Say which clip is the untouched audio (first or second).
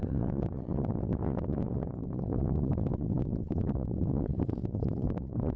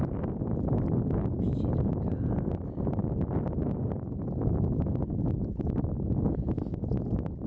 second